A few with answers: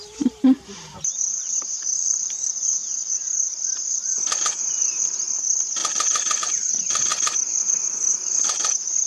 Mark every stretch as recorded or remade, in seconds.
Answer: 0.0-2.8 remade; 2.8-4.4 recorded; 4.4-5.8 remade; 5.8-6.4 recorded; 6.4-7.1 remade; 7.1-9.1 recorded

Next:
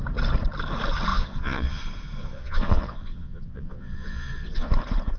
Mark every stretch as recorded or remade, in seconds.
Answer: 0.0-1.1 recorded; 1.1-1.8 remade; 1.8-2.2 recorded; 2.2-4.7 remade; 4.7-5.2 recorded

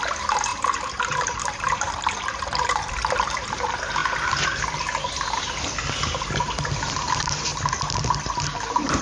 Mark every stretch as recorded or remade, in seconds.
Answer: 0.0-4.0 remade; 4.0-6.2 recorded; 6.2-7.5 remade; 7.5-8.4 recorded; 8.4-9.0 remade

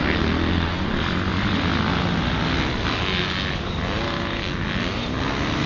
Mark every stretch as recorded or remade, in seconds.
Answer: 0.0-5.7 recorded

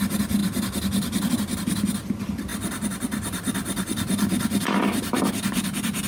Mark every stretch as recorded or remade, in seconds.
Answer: 0.0-6.1 recorded